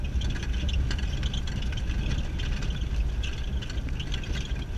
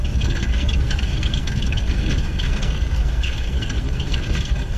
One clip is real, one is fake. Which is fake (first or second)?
second